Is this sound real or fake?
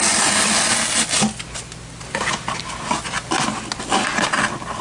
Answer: real